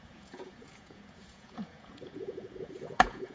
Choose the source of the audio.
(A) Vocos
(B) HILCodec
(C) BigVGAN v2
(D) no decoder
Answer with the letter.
A